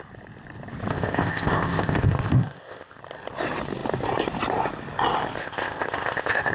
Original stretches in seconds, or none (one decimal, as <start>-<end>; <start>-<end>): 0.0-0.9; 3.0-5.4